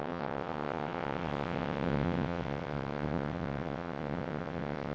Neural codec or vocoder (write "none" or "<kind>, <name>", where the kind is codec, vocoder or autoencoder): vocoder, WaveNeXt